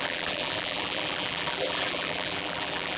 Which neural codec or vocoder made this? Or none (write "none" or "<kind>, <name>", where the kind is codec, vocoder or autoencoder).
vocoder, BigVGAN v2